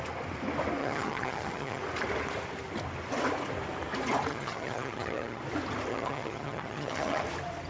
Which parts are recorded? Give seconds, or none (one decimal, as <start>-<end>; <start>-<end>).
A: 0.0-0.8; 1.8-4.3; 5.4-5.9; 7.2-7.7